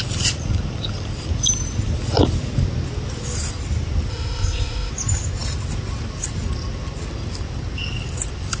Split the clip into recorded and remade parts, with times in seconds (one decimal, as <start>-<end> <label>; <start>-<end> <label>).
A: 0.0-4.1 recorded; 4.1-4.9 remade; 4.9-8.6 recorded

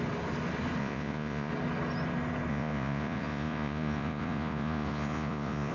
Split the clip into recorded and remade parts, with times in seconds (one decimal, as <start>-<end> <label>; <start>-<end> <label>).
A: 0.0-0.8 recorded; 0.8-1.5 remade; 1.5-2.5 recorded; 2.5-5.7 remade